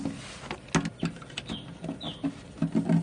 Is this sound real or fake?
real